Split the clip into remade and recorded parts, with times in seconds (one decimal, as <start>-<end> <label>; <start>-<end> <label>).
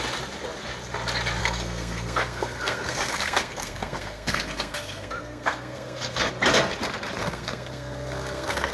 0.0-1.4 recorded; 1.4-6.3 remade; 6.3-7.2 recorded; 7.2-8.7 remade